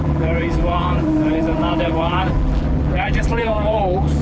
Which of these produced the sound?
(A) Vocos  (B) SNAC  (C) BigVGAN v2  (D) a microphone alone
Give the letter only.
C